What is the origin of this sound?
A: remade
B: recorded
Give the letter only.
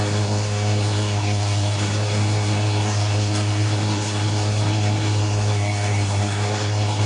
A